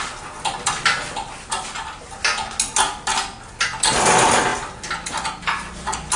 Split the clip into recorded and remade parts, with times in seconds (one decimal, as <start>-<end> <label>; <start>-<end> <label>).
0.0-6.2 recorded